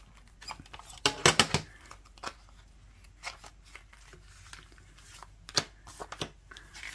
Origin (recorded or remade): recorded